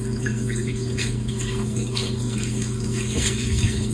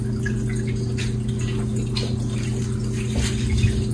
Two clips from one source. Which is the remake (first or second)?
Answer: first